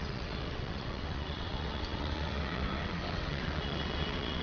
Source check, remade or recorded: remade